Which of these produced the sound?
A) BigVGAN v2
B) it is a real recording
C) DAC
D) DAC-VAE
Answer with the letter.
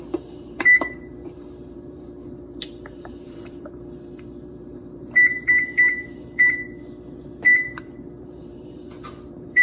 A